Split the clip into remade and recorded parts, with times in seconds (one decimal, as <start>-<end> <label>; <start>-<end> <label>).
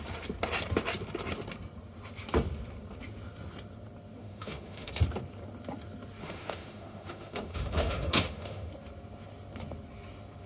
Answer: 0.0-4.2 recorded; 4.2-4.9 remade; 4.9-6.2 recorded; 6.2-8.7 remade; 8.7-10.5 recorded